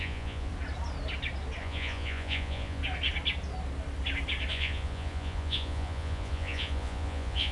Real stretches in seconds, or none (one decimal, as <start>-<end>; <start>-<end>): 0.5-1.6; 2.8-4.5